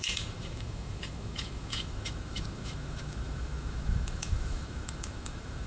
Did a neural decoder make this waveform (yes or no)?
yes